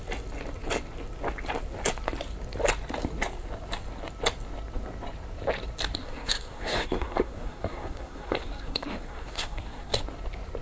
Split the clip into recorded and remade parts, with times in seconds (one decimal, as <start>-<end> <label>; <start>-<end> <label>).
0.0-6.0 recorded; 6.0-10.0 remade; 10.0-10.6 recorded